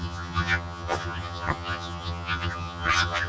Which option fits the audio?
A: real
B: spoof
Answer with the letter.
B